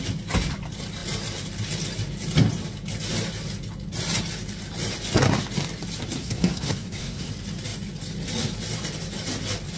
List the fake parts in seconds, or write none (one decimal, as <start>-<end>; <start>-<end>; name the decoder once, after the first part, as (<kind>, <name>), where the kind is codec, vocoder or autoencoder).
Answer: 6.2-7.3 (codec, SNAC)